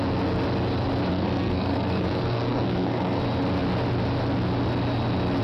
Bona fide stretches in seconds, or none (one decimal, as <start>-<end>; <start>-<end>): 0.0-1.1; 3.2-5.4